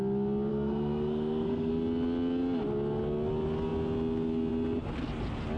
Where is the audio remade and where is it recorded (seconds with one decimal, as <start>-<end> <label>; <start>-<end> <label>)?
0.0-0.5 recorded; 0.5-1.7 remade; 1.7-5.6 recorded